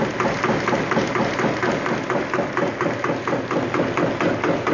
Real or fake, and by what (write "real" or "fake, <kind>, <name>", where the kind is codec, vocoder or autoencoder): real